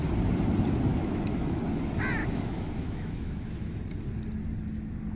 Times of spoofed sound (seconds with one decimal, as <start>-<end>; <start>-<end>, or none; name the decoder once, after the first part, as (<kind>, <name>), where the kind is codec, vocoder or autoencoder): 0.9-1.6 (autoencoder, DAC-VAE); 2.2-3.8